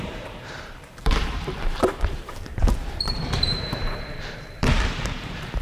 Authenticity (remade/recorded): remade